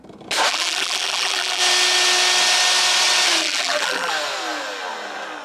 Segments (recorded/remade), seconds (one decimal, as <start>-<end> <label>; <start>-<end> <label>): 0.0-0.5 recorded; 0.5-1.6 remade; 1.6-3.4 recorded; 3.4-4.1 remade; 4.1-5.4 recorded

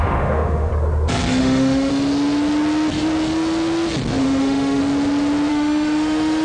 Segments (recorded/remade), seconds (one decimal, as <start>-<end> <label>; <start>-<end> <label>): 0.0-0.7 remade; 0.7-1.4 recorded; 1.4-1.9 remade; 1.9-4.2 recorded; 4.2-4.8 remade; 4.8-5.5 recorded; 5.5-6.4 remade

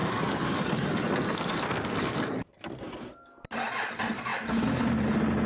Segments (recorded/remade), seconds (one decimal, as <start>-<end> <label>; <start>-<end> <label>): 0.0-5.5 recorded

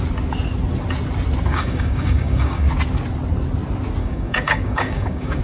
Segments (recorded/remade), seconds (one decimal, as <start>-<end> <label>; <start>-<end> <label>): 0.0-1.5 recorded; 1.5-2.7 remade; 2.7-4.0 recorded; 4.0-5.4 remade

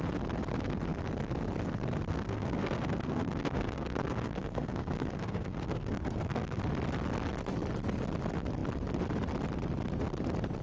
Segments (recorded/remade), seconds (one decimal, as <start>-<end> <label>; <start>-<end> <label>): 0.0-2.1 recorded; 2.1-6.6 remade; 6.6-10.6 recorded

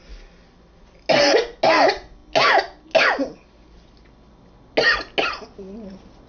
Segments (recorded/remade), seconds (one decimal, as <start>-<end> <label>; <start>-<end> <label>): 0.0-6.3 recorded

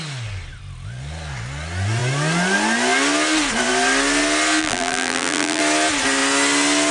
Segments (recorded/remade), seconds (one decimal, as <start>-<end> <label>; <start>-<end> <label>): 0.0-4.6 recorded; 4.6-5.6 remade; 5.6-6.9 recorded

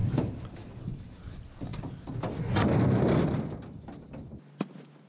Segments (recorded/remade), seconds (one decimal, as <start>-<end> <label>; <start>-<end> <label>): 0.0-5.1 recorded